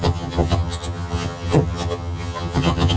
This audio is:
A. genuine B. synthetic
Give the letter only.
B